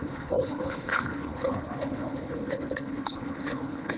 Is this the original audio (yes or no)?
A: no